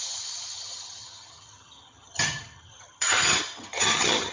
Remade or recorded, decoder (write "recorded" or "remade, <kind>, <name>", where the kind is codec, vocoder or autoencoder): remade, vocoder, HiFi-GAN